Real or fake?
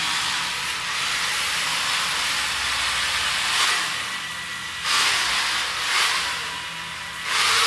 real